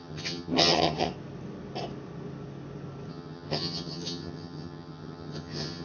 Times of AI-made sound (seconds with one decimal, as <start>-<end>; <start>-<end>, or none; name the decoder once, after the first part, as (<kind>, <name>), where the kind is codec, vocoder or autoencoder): 0.0-1.1 (vocoder, HiFi-GAN); 3.1-5.8